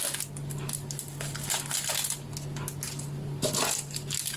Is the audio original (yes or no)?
yes